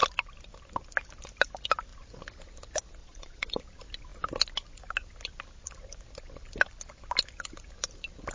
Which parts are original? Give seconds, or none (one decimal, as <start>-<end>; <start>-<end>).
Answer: 0.0-3.0; 3.6-8.3